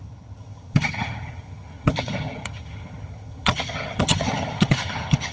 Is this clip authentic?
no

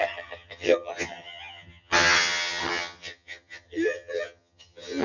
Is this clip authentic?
no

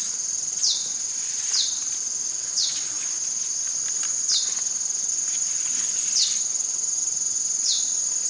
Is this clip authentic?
yes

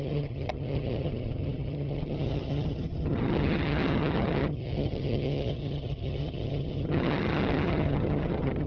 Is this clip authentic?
no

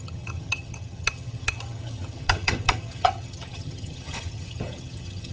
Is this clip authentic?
no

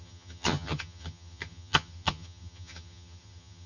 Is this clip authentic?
no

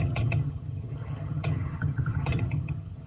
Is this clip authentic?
no